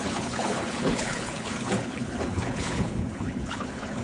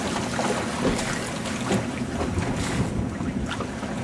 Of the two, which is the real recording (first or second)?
second